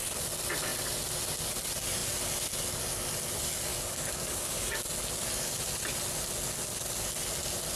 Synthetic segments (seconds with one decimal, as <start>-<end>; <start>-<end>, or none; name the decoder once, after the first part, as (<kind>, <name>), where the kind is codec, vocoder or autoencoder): 3.7-4.8 (codec, DAC)